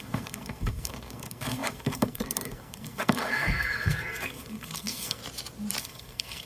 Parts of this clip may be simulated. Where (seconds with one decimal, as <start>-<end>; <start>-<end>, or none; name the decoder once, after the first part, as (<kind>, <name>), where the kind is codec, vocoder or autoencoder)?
0.0-5.2 (codec, SNAC); 5.8-6.5